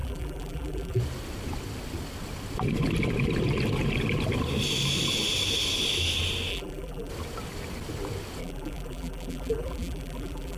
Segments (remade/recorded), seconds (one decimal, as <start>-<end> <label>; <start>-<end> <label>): 0.0-1.0 remade; 1.0-6.5 recorded; 6.5-7.1 remade; 7.1-8.4 recorded; 8.4-10.6 remade